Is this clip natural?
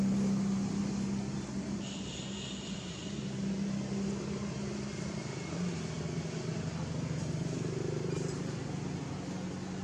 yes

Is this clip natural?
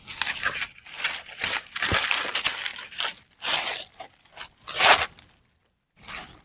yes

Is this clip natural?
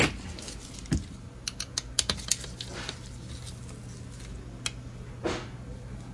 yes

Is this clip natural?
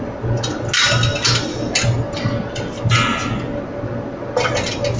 yes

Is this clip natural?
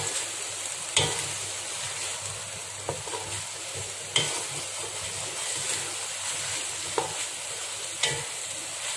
yes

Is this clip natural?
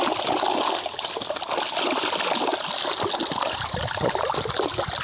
yes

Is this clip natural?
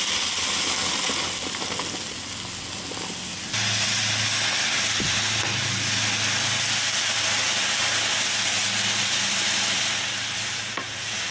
yes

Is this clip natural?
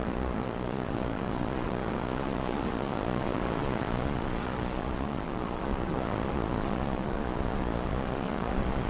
no